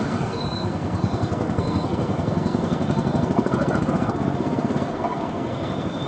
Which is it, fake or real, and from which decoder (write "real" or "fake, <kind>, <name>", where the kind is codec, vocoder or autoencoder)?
fake, codec, SNAC